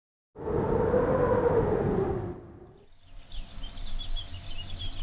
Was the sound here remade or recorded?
recorded